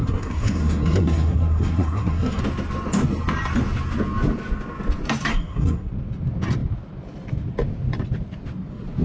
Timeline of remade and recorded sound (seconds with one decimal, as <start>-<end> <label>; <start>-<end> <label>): 0.0-2.4 remade; 2.4-5.3 recorded; 5.3-5.9 remade; 5.9-9.0 recorded